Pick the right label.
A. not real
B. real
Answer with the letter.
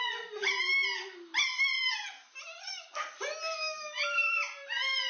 B